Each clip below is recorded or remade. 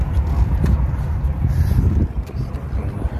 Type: recorded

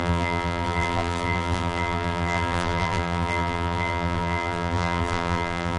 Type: remade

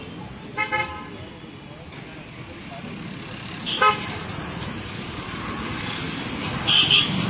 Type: recorded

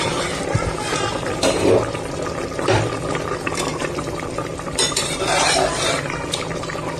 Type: remade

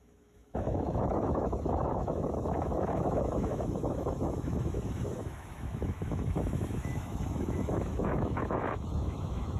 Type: remade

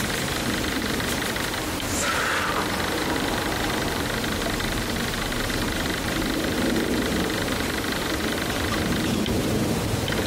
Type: remade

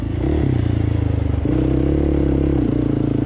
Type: recorded